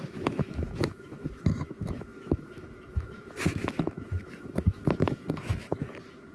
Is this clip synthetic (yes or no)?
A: yes